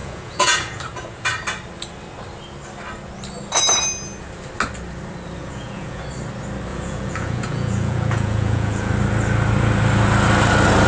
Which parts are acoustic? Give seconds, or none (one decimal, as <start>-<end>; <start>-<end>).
0.8-5.4; 6.0-6.7; 8.9-10.9